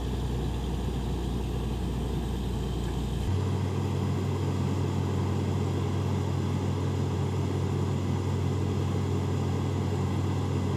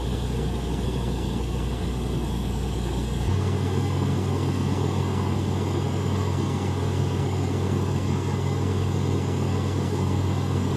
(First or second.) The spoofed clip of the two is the second